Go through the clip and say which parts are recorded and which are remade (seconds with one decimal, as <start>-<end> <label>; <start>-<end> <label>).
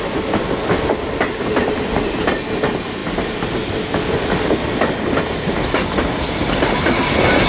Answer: 0.0-7.5 recorded